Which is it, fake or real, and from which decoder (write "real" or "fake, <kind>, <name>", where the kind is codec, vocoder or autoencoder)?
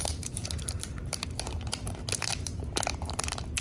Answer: fake, vocoder, BigVGAN v2